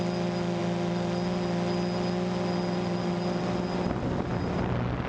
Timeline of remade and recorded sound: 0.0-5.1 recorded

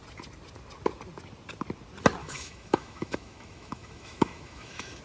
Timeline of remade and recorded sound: 0.0-2.2 recorded; 2.2-5.0 remade